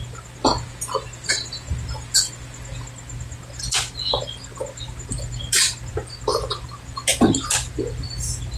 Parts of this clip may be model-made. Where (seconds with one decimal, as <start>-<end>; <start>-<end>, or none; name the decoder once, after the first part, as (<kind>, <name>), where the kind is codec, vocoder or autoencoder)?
none